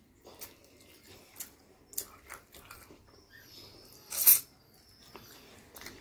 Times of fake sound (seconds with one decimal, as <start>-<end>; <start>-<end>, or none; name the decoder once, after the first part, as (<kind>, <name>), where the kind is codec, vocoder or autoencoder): none